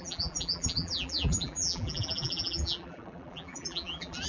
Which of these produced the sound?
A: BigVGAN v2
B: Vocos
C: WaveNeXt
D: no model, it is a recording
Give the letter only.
A